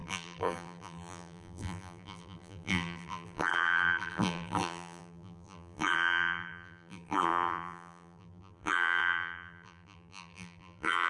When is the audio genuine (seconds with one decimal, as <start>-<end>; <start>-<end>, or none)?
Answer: none